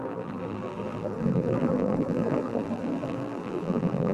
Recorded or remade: remade